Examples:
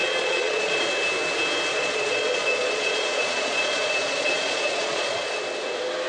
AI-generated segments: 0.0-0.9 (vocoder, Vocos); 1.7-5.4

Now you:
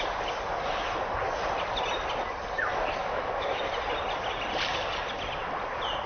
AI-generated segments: 3.0-3.6 (autoencoder, DAC-VAE)

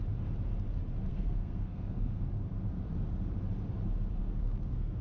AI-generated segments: 1.1-2.3 (codec, SNAC); 4.2-5.0

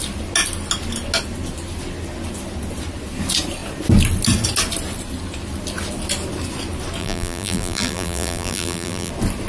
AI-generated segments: 7.0-9.1 (vocoder, BigVGAN v2)

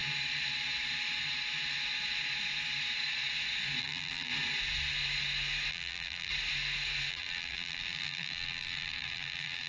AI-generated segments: 3.8-4.3 (vocoder, BigVGAN v2); 5.7-6.3; 7.1-9.7

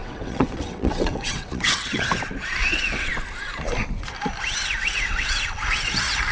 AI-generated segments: 0.0-2.0 (vocoder, WaveNeXt); 2.6-3.1; 4.8-5.4